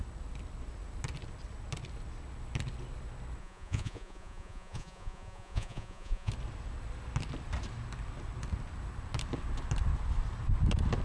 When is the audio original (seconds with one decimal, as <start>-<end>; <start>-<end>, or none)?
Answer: 0.0-3.4; 6.3-11.0